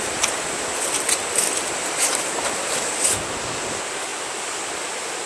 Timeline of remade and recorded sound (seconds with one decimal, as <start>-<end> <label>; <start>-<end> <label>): 0.0-5.3 recorded

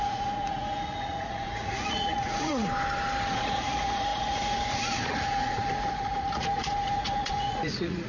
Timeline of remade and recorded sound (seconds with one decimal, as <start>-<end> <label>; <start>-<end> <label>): 0.0-2.6 remade; 2.6-3.3 recorded; 3.3-8.1 remade

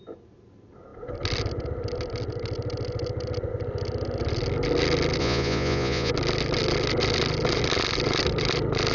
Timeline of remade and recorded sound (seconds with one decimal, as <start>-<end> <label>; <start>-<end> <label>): 0.0-5.2 recorded; 5.2-6.1 remade; 6.1-8.9 recorded

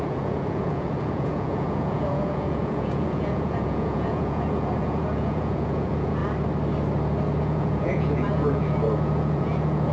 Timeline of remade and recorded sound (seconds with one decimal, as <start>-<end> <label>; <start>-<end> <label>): 0.0-6.2 remade; 6.2-7.4 recorded; 7.4-9.9 remade

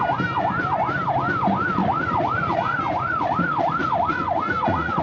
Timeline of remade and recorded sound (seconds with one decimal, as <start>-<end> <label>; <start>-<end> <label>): 0.0-1.8 recorded; 1.8-5.0 remade

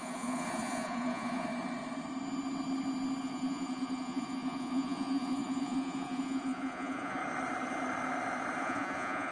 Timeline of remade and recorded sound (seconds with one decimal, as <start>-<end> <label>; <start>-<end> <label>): 0.0-1.5 remade; 1.5-3.2 recorded; 3.2-7.2 remade; 7.2-8.6 recorded; 8.6-9.3 remade

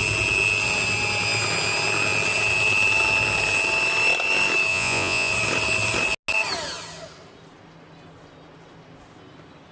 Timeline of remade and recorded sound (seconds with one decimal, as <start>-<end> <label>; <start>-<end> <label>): 0.0-4.7 recorded; 4.7-5.3 remade; 5.3-9.7 recorded

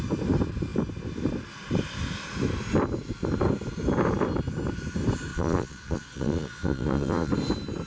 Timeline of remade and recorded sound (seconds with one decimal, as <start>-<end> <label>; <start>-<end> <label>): 0.0-5.3 recorded; 5.3-7.3 remade; 7.3-7.9 recorded